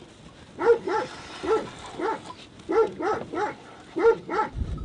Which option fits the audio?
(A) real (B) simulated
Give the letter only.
A